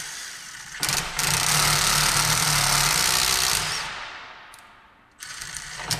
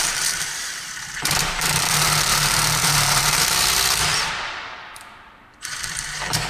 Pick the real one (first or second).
first